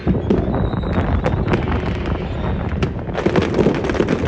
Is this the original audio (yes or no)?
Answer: yes